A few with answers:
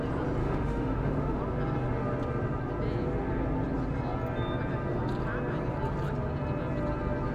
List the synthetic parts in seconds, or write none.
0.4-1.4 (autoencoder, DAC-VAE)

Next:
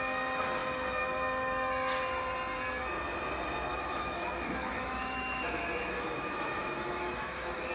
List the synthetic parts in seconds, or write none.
3.7-7.7 (autoencoder, DAC-VAE)

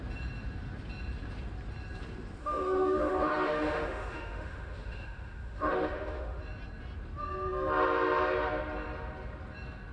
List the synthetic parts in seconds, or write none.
2.4-6.4 (autoencoder, DAC-VAE)

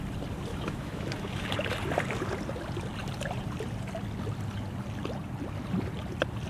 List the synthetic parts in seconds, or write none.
0.5-1.5 (autoencoder, DAC-VAE)

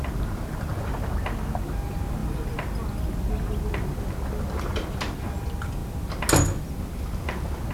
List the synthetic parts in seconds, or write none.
none